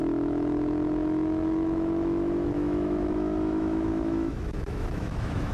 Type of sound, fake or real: fake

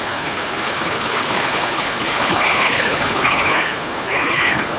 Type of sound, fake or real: fake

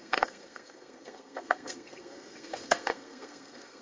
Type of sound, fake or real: fake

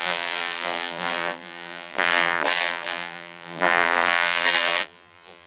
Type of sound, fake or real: fake